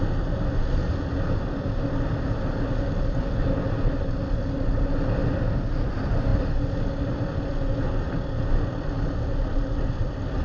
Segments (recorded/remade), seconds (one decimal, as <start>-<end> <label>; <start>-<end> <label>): 0.0-10.4 recorded